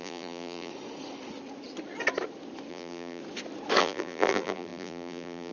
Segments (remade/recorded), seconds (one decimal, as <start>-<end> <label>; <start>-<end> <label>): 0.0-0.7 remade; 0.7-2.7 recorded; 2.7-3.2 remade; 3.2-3.8 recorded; 3.8-5.5 remade